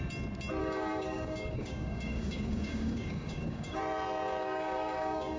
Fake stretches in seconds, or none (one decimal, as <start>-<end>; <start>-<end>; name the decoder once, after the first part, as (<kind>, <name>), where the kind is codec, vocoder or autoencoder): 0.6-3.8 (codec, DAC); 4.4-5.4